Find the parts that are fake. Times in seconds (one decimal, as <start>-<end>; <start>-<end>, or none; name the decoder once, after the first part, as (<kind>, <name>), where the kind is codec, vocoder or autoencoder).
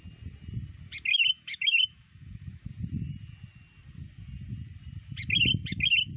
1.1-2.7 (autoencoder, DAC-VAE)